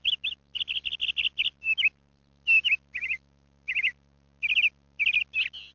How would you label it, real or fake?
real